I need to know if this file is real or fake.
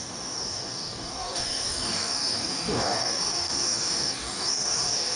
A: fake